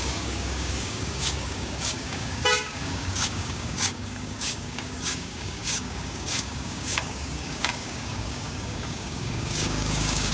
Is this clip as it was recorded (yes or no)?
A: no